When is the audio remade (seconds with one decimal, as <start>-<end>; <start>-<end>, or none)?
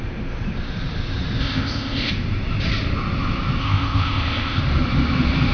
1.4-2.1; 3.6-4.6